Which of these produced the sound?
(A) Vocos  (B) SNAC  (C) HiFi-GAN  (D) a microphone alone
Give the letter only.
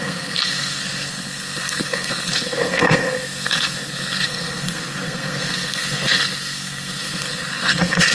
B